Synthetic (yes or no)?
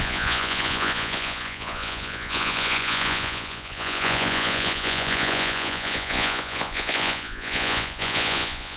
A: yes